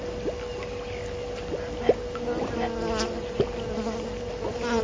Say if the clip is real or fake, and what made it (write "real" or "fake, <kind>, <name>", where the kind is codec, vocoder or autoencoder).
real